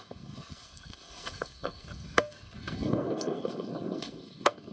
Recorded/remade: remade